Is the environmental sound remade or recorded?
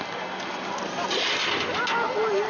recorded